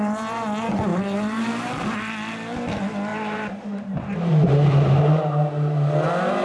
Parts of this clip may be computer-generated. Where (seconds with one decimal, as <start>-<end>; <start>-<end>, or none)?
0.9-1.7; 3.1-5.2